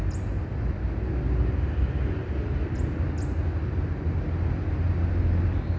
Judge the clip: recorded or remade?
recorded